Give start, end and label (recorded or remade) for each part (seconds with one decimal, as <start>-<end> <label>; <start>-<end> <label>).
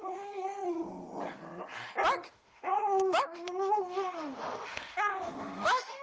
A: 0.0-0.6 remade; 0.6-2.3 recorded; 2.3-6.0 remade